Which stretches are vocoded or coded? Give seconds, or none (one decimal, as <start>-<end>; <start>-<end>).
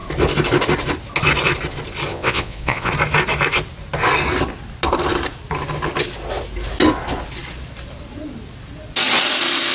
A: 2.1-2.9